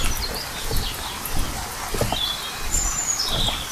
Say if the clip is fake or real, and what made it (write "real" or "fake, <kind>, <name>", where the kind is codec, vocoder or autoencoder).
real